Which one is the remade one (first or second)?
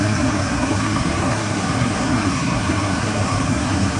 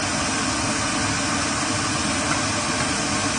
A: first